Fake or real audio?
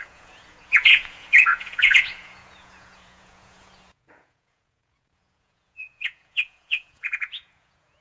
fake